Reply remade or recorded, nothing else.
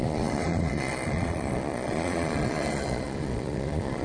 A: remade